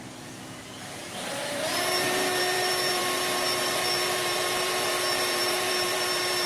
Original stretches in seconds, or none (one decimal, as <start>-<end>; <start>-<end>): 3.0-3.6